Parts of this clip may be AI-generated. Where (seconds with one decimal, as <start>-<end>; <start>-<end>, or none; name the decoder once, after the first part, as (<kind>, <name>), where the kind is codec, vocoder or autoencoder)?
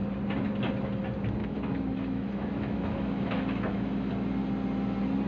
1.4-4.1 (autoencoder, DAC-VAE)